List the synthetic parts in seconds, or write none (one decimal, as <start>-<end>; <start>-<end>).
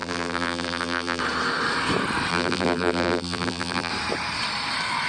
0.0-1.2; 2.3-3.9